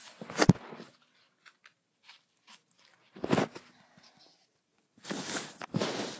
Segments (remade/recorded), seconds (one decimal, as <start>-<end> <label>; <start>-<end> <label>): 0.0-6.2 recorded